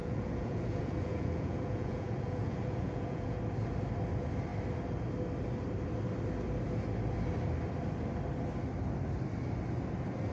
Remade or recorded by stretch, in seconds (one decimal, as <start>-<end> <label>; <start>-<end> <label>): 0.0-3.4 remade; 3.4-10.3 recorded